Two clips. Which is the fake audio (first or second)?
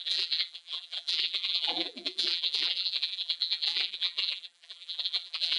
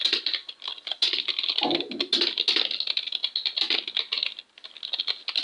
first